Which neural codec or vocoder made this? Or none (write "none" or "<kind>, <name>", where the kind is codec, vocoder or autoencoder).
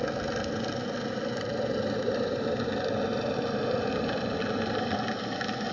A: none